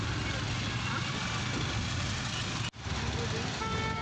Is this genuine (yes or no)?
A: yes